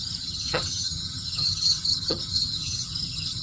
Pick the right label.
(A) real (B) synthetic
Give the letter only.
B